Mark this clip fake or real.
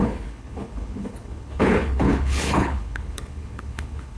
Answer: fake